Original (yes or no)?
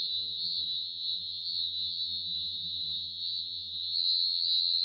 no